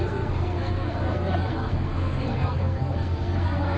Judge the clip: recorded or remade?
remade